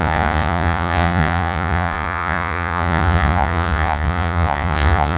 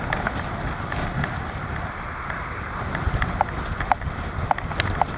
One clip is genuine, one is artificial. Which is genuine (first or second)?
second